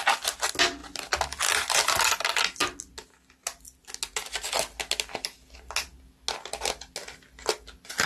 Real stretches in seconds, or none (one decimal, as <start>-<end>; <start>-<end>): 0.0-8.1

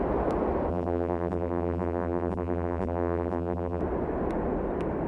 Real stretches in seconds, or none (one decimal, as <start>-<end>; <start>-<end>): 0.0-0.7; 3.8-5.1